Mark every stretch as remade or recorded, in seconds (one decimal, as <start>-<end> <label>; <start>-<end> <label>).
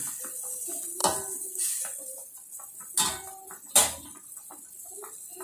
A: 0.0-5.4 recorded